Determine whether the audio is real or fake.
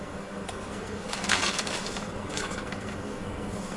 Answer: fake